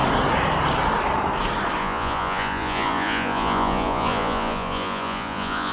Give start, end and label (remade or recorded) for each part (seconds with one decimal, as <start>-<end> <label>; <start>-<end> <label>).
0.0-1.8 recorded; 1.8-5.7 remade